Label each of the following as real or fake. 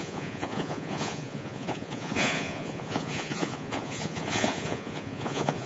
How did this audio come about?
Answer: fake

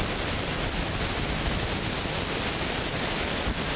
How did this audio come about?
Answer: real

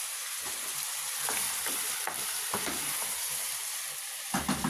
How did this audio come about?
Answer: fake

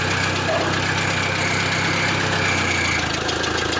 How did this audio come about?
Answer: real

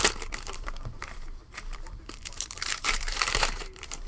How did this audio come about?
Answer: fake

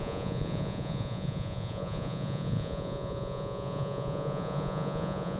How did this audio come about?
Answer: fake